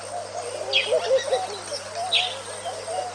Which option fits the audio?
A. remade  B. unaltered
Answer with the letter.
B